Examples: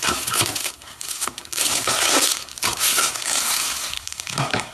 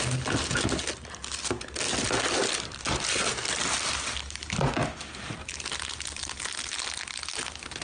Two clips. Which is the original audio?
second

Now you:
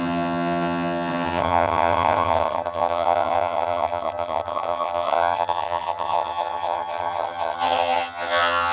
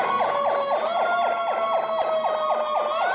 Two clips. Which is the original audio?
second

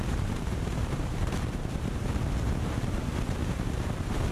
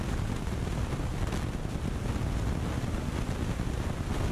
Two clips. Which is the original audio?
second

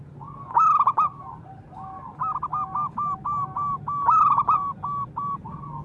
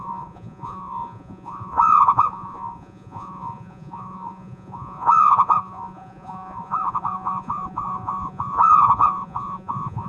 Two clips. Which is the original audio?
first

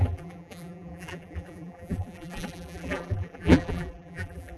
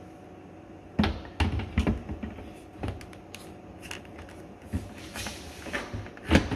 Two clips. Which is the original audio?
second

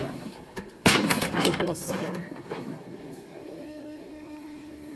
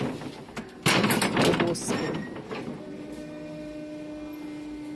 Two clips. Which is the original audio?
second